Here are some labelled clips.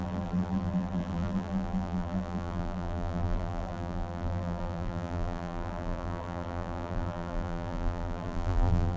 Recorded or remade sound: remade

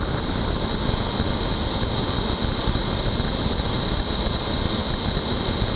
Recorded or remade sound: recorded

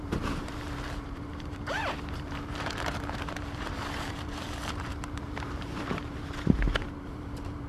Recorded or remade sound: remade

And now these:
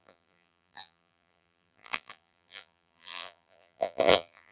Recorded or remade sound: remade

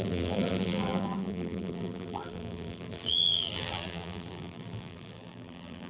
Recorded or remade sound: remade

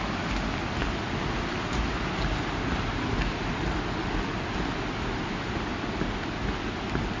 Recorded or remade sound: recorded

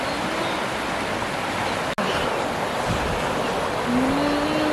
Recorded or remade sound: recorded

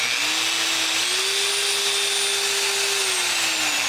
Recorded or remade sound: recorded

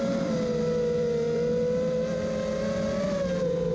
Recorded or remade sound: recorded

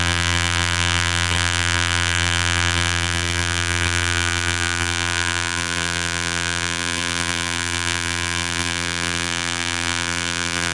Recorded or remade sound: remade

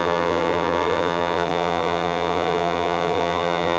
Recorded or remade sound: remade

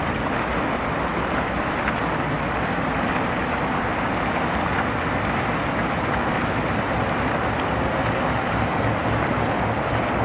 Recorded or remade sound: recorded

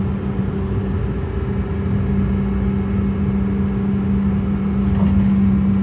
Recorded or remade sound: recorded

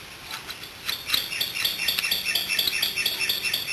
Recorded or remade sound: remade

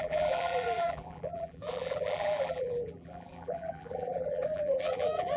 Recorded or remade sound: remade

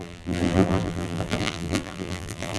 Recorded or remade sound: remade